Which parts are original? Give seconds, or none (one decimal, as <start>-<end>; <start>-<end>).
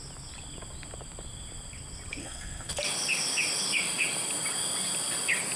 0.0-2.2; 2.7-5.6